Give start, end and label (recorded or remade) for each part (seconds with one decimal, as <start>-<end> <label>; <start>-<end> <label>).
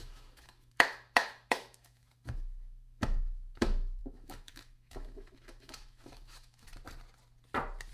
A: 0.0-6.7 remade; 6.7-7.9 recorded